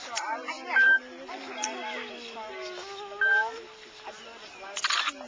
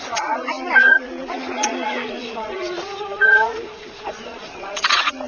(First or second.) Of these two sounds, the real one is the first